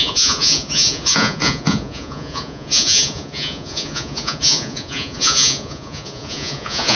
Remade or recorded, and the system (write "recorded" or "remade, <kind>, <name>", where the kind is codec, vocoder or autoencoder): remade, vocoder, Vocos